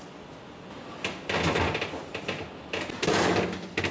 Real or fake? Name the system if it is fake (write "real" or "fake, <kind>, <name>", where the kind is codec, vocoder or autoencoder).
real